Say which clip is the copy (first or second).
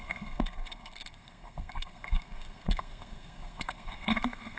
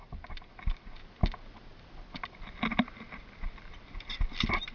first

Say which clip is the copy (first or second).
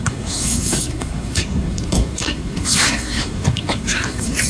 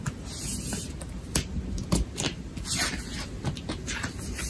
first